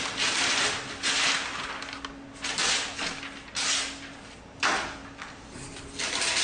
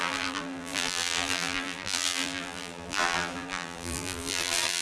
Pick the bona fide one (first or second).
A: first